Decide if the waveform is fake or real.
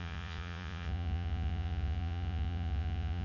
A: fake